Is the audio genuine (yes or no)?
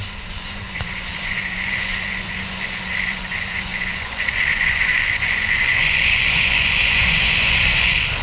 no